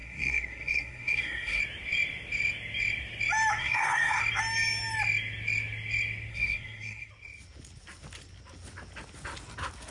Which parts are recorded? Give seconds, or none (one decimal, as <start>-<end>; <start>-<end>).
1.6-3.6; 4.2-6.3; 7.1-9.9